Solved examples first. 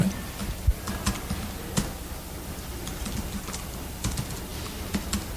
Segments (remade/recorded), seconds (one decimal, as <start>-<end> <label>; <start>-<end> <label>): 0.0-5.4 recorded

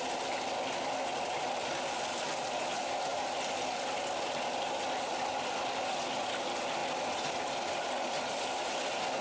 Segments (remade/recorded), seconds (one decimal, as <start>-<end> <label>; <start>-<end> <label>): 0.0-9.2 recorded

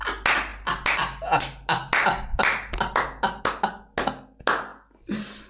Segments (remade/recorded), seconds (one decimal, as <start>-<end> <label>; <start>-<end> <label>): 0.0-5.5 recorded

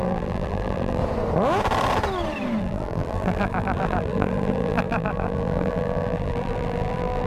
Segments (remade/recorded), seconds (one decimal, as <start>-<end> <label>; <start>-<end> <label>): 0.0-1.0 remade; 1.0-2.6 recorded; 2.6-7.3 remade

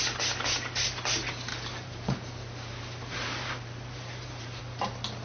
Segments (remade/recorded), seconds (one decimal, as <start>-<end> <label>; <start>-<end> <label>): 0.0-1.5 recorded; 1.5-4.6 remade; 4.6-5.2 recorded

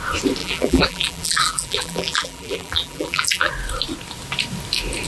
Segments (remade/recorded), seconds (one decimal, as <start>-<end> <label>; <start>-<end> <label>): 0.0-0.4 recorded; 0.4-3.5 remade; 3.5-5.1 recorded

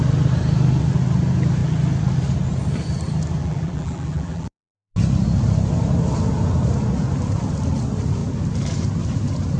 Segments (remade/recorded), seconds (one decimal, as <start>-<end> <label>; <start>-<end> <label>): 0.0-3.4 recorded; 3.4-4.9 remade; 4.9-9.6 recorded

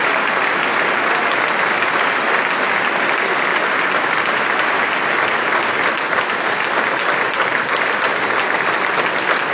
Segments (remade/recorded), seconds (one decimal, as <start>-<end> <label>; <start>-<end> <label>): 0.0-8.1 remade; 8.1-8.9 recorded; 8.9-9.5 remade